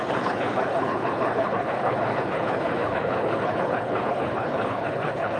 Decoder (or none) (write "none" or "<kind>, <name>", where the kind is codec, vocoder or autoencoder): codec, HILCodec